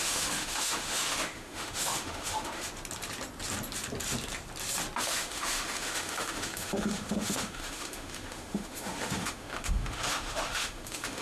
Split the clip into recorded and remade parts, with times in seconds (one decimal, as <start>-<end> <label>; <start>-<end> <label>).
0.0-2.6 remade; 2.6-5.0 recorded; 5.0-11.2 remade